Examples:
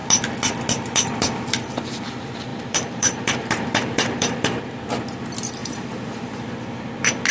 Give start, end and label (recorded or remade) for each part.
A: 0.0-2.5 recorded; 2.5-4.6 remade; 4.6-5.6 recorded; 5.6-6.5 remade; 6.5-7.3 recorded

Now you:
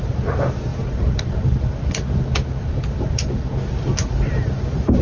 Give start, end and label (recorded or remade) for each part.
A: 0.0-5.0 recorded

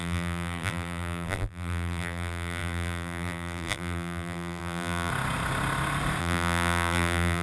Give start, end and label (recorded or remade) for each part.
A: 0.0-5.1 remade; 5.1-6.2 recorded; 6.2-7.4 remade

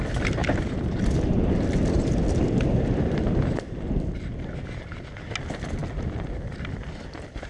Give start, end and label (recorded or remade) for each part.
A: 0.0-0.4 recorded; 0.4-2.4 remade; 2.4-7.5 recorded

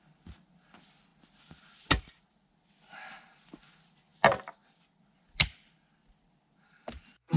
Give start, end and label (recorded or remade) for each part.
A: 0.0-4.1 recorded; 4.1-4.8 remade; 4.8-7.4 recorded